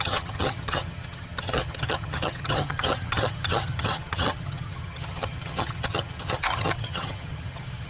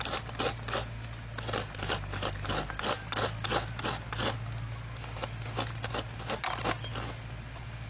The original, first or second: second